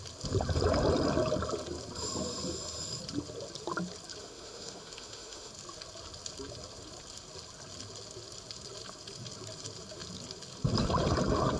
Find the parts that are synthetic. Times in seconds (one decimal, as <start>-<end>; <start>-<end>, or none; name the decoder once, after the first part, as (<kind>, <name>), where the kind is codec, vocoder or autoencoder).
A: 4.2-5.5 (autoencoder, DAC-VAE)